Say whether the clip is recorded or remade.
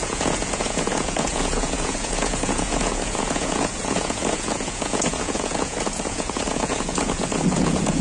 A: remade